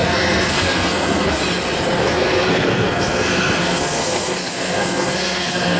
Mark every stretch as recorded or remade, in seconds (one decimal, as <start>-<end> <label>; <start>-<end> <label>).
0.0-1.4 remade; 1.4-2.0 recorded; 2.0-5.8 remade